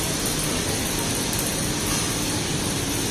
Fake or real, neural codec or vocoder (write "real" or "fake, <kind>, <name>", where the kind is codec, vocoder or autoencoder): real